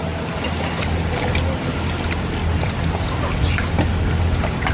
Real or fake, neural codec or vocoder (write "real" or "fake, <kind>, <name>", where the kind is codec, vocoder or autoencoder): real